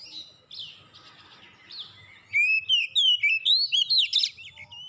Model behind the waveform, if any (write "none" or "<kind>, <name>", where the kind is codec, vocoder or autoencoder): none